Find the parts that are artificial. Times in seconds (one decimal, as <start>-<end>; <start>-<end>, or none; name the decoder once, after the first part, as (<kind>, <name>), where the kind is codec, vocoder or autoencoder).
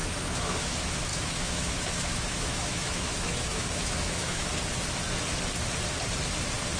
0.0-0.7 (autoencoder, DAC-VAE); 1.1-4.5